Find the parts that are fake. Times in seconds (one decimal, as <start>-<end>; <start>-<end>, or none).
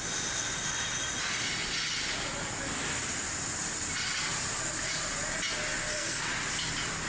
5.8-6.3